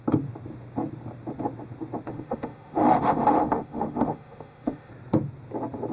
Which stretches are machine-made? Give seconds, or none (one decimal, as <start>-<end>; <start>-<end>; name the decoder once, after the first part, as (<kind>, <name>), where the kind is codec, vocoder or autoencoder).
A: 2.1-4.9 (autoencoder, DAC-VAE)